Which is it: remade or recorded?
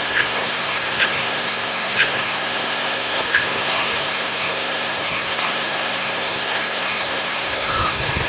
remade